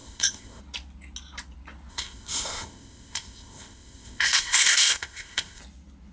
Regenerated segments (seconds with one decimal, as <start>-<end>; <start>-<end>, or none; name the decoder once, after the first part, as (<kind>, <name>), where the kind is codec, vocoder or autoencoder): 0.0-0.6 (codec, ZipCodec); 1.9-5.6